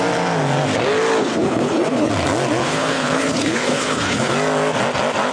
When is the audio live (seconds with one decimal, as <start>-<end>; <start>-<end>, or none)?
0.0-1.2; 2.1-2.6; 4.3-5.3